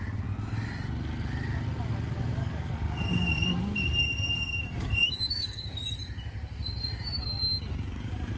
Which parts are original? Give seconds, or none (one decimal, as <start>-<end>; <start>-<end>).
0.0-2.4; 3.4-4.0; 5.8-7.5

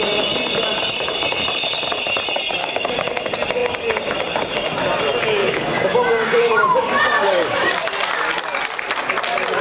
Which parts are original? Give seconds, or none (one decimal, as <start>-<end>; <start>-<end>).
0.0-2.6; 3.1-5.4; 7.8-9.6

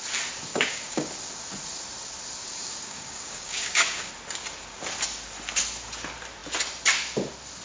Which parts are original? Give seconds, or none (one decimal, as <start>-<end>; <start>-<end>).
0.0-0.5; 1.1-2.5; 4.1-7.6